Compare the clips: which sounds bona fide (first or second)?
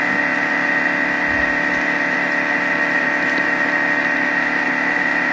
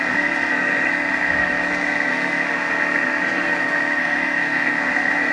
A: first